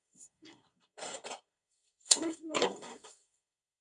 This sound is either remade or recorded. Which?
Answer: remade